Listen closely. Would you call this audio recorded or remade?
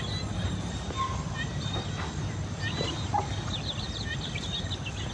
recorded